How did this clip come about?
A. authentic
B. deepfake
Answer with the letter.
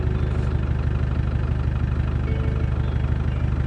A